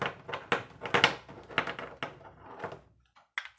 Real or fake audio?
real